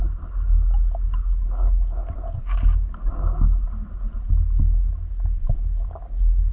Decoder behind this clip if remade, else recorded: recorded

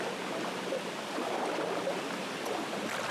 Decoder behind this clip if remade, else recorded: recorded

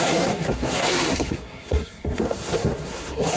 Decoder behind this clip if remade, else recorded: remade, codec, SNAC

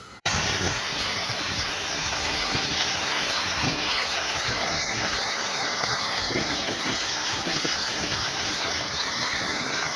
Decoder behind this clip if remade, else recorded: remade, codec, SNAC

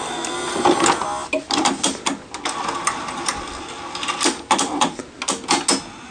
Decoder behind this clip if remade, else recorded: recorded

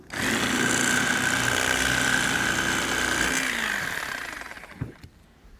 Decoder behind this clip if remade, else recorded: recorded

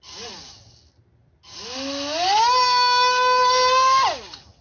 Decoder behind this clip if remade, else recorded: recorded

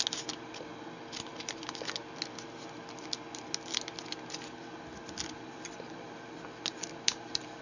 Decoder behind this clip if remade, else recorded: recorded